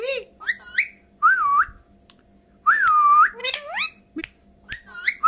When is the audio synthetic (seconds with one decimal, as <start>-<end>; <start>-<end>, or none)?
none